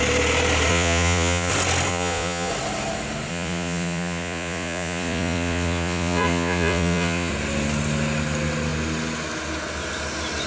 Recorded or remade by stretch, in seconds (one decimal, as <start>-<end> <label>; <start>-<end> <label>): 0.0-0.7 recorded; 0.7-1.5 remade; 1.5-1.9 recorded; 1.9-2.5 remade; 2.5-3.3 recorded; 3.3-7.3 remade; 7.3-10.5 recorded